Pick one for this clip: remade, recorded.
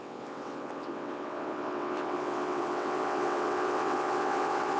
remade